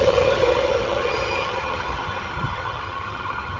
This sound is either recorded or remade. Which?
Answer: remade